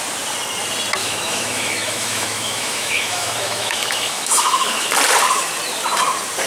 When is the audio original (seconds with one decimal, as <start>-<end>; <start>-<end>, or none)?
0.0-1.0; 4.9-6.5